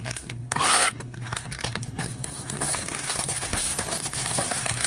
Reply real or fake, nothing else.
fake